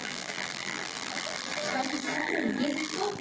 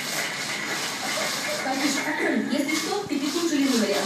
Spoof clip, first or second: first